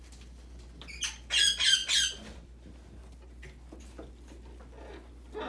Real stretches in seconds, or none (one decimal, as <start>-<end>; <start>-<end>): 0.0-5.5